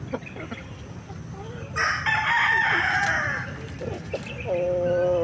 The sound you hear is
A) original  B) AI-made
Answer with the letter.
A